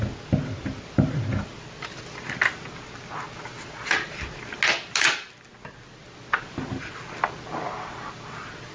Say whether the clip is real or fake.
real